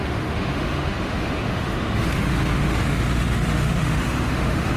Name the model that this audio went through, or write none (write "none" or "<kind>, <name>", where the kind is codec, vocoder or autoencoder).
autoencoder, DAC-VAE